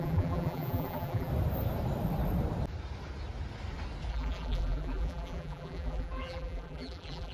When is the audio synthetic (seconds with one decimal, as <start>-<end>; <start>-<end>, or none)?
0.0-1.3; 4.1-7.3